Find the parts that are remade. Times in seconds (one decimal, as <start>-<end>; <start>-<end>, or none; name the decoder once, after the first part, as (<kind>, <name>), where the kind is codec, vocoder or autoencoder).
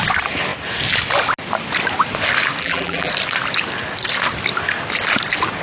2.6-3.1 (vocoder, BigVGAN v2)